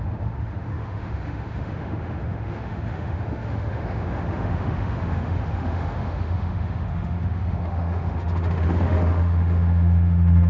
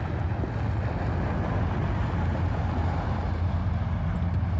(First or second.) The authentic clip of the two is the second